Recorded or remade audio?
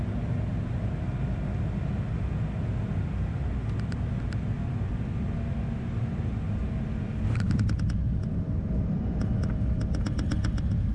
recorded